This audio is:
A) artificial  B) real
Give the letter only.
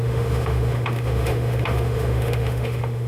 A